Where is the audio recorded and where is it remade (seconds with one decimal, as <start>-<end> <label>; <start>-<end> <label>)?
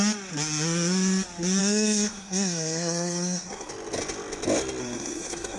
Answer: 0.0-1.6 recorded; 1.6-3.7 remade; 3.7-4.8 recorded; 4.8-5.6 remade